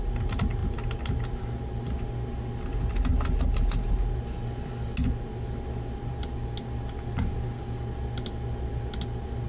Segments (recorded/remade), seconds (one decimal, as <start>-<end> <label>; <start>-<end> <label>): 0.0-9.5 recorded